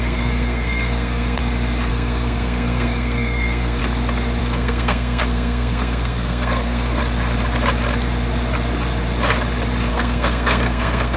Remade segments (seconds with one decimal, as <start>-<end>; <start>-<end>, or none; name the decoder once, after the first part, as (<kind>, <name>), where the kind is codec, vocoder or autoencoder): 0.0-1.4 (codec, SNAC); 1.9-3.8; 4.4-7.0; 9.9-11.2